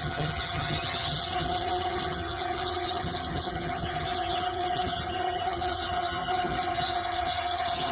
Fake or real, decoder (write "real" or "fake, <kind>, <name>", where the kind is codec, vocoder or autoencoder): fake, vocoder, HiFi-GAN